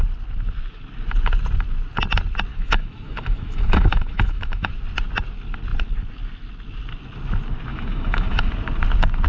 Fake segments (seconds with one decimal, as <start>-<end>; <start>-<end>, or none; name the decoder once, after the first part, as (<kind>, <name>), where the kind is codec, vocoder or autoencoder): 2.5-4.7 (autoencoder, DAC-VAE); 7.7-8.5